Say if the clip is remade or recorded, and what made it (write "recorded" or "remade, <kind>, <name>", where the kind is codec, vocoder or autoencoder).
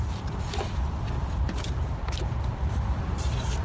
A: remade, vocoder, BigVGAN v2